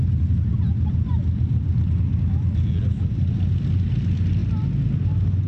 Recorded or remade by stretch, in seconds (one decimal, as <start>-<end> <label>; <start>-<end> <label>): 0.0-5.5 recorded